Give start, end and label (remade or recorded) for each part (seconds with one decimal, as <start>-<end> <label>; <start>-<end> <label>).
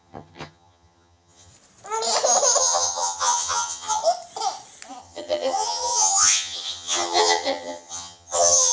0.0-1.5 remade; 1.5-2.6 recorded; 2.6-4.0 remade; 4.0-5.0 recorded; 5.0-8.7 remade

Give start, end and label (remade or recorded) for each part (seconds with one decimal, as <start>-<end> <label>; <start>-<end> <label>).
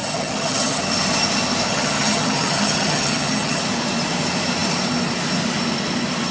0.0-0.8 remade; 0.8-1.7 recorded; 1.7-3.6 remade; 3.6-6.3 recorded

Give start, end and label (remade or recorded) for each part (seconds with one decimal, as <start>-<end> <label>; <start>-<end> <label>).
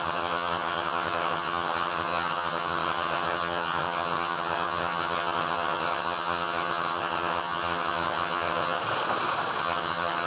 0.0-8.8 remade; 8.8-9.6 recorded; 9.6-10.3 remade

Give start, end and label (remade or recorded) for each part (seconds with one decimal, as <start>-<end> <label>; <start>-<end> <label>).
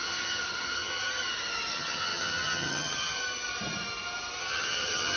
0.0-1.1 remade; 1.1-1.7 recorded; 1.7-3.2 remade; 3.2-4.4 recorded; 4.4-5.2 remade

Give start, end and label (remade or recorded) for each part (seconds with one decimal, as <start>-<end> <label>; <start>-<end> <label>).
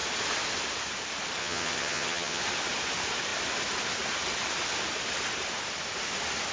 0.0-1.4 recorded; 1.4-2.4 remade; 2.4-6.5 recorded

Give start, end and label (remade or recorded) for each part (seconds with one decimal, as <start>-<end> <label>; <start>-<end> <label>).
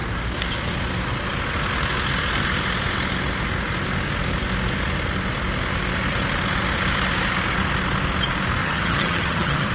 0.0-8.6 recorded; 8.6-9.7 remade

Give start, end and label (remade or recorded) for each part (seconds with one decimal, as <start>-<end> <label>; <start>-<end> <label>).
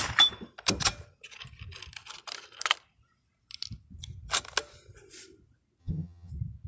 0.0-5.8 recorded; 5.8-6.3 remade; 6.3-6.7 recorded